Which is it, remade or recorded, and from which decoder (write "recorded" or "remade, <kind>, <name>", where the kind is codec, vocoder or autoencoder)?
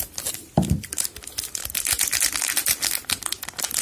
recorded